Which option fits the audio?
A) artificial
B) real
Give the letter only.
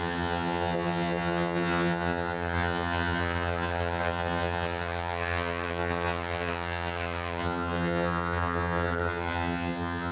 A